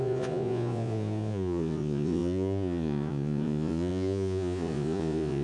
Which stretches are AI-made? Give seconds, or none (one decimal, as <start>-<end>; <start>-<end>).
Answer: 0.0-5.4